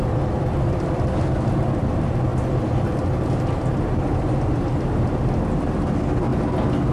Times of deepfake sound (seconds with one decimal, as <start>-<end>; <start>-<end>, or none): 0.0-6.3